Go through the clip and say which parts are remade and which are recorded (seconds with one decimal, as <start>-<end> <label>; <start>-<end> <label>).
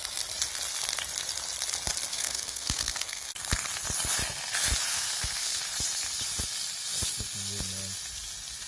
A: 0.0-2.1 recorded; 2.1-3.3 remade; 3.3-4.9 recorded; 4.9-5.6 remade; 5.6-8.7 recorded